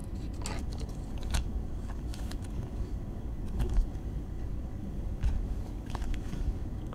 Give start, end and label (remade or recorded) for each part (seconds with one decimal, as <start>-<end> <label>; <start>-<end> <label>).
0.0-0.6 recorded; 0.6-6.9 remade